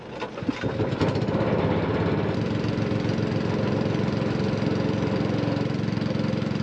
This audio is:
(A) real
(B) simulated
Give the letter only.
A